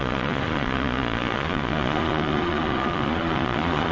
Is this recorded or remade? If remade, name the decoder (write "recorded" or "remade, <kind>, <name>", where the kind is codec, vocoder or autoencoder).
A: remade, vocoder, Vocos